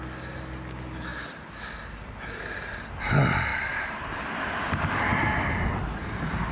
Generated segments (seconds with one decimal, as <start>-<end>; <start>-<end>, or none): 3.5-4.0